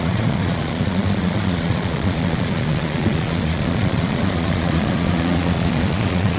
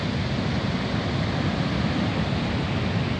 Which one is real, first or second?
second